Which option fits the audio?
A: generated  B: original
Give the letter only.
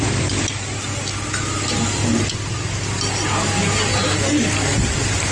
B